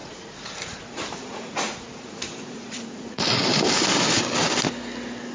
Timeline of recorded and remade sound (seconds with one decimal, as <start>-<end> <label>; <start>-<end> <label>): 0.0-3.2 remade; 3.2-5.3 recorded